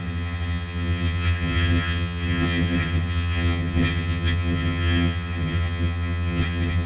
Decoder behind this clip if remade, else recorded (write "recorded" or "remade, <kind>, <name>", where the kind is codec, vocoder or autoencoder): remade, vocoder, HiFi-GAN